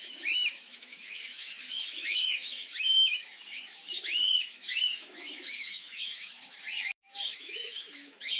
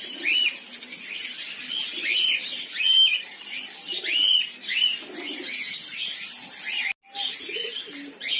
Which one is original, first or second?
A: second